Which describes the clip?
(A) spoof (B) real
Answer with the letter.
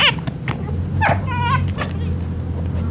B